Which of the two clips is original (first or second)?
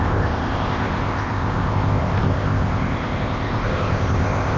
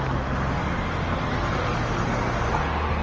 second